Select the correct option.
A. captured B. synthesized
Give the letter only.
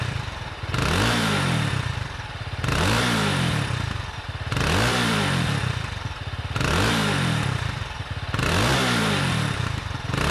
B